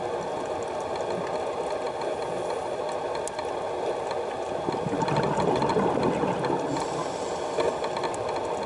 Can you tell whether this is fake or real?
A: real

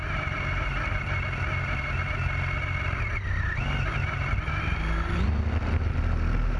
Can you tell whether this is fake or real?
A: real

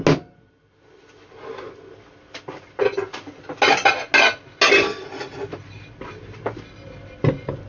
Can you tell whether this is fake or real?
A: real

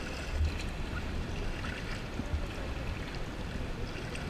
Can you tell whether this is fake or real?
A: real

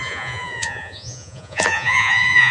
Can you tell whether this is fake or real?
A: fake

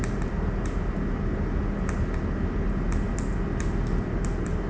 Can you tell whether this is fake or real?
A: real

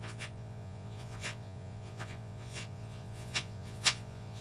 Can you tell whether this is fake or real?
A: fake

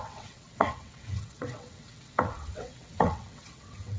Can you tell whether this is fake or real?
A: fake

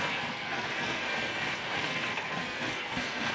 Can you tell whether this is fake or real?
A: fake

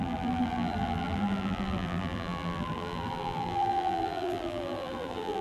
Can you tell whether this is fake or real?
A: fake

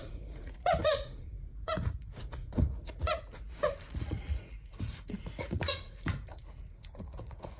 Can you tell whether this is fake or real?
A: fake